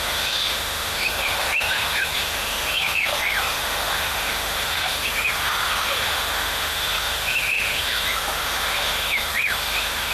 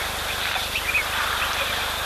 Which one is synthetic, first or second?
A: first